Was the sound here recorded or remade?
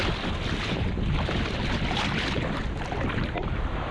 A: recorded